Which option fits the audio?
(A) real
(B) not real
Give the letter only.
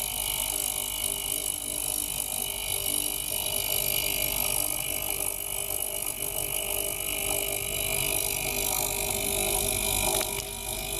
A